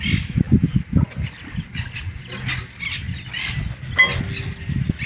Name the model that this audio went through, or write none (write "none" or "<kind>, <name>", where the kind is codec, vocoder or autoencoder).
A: none